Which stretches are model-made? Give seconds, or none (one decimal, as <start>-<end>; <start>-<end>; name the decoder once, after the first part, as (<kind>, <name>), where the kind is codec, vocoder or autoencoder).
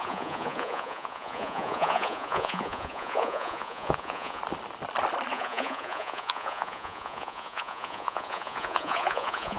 0.0-4.4 (vocoder, Vocos); 5.3-9.6